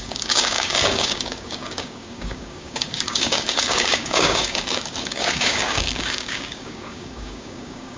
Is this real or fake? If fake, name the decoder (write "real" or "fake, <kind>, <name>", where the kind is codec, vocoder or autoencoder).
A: fake, codec, DAC